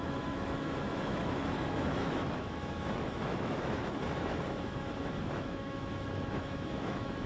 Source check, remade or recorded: remade